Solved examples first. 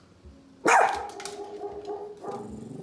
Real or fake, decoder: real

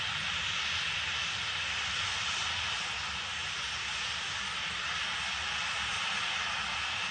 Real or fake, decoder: real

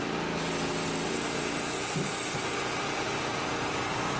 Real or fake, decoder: real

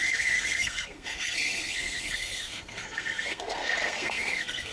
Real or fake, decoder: fake, codec, SNAC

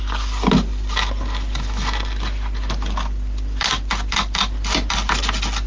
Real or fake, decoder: real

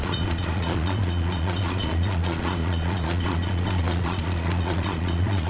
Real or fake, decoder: fake, vocoder, Vocos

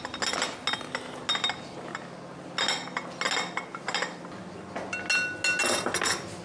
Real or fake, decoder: real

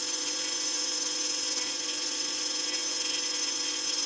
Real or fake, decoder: fake, vocoder, Vocos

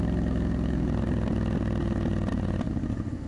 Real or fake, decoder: real